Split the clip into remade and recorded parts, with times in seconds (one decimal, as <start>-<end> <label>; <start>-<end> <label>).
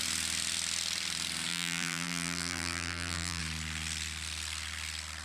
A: 0.0-1.5 recorded; 1.5-3.4 remade; 3.4-5.2 recorded